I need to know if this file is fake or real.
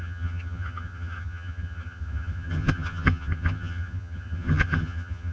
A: fake